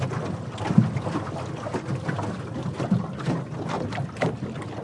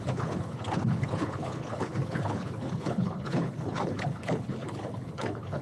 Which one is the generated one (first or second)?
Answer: second